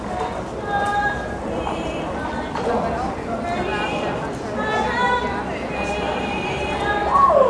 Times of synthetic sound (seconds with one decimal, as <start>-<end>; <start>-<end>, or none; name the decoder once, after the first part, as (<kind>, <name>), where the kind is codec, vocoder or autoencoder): 0.5-1.9 (vocoder, BigVGAN v2)